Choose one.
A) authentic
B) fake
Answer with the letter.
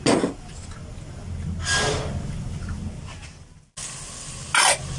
A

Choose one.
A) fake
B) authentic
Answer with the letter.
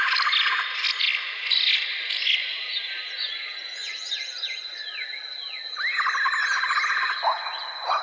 B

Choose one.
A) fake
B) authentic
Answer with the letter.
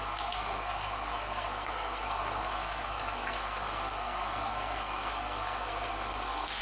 A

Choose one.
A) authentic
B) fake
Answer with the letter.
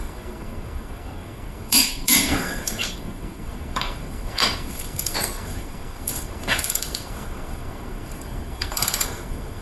B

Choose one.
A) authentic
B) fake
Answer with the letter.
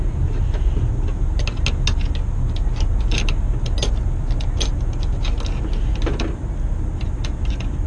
A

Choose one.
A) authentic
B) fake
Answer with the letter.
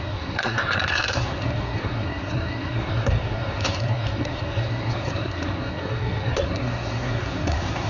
B